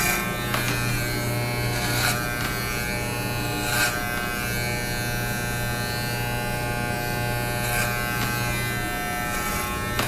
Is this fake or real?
real